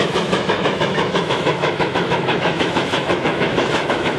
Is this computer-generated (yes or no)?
yes